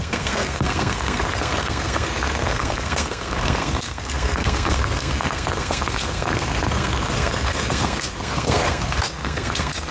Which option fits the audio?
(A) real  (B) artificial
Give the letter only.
B